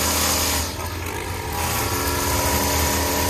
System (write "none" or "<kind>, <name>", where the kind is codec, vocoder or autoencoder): none